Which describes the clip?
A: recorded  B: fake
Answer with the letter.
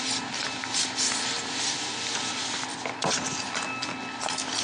A